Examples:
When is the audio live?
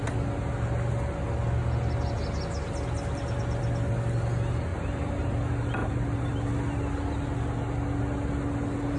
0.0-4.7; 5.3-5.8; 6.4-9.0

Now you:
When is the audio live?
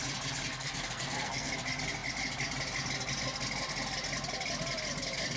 0.0-0.5; 1.5-5.4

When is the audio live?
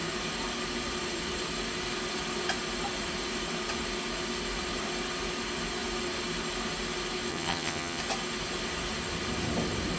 0.0-7.3; 8.0-10.0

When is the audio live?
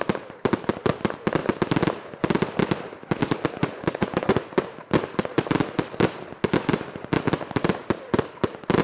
0.0-3.6; 4.5-8.8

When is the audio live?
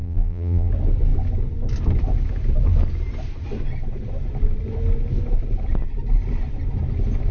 0.7-7.3